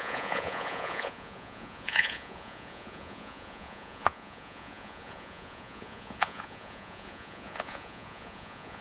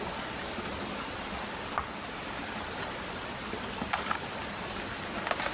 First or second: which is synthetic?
first